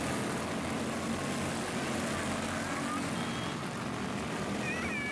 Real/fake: real